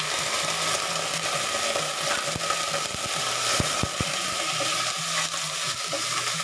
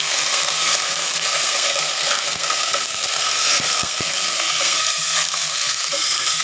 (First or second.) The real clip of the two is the first